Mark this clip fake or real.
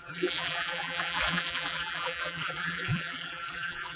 fake